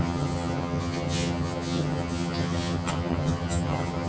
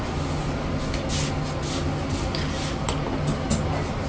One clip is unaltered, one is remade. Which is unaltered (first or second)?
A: second